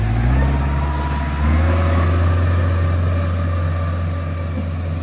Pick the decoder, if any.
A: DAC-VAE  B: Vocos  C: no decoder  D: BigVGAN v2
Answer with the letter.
C